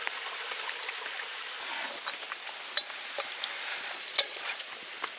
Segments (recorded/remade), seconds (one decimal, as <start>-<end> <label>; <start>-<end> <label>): 0.0-3.7 recorded; 3.7-4.6 remade; 4.6-5.2 recorded